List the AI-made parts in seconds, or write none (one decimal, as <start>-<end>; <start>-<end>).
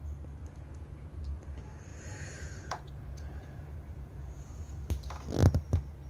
0.7-1.2; 1.9-4.8